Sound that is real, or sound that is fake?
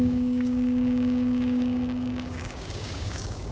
fake